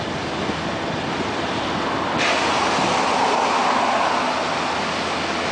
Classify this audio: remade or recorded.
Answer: recorded